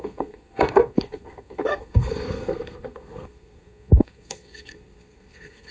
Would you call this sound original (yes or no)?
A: no